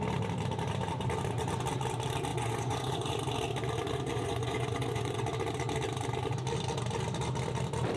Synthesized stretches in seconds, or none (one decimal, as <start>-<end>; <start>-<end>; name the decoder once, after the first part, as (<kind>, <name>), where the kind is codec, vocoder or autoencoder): 2.3-3.1 (vocoder, Vocos); 4.1-5.2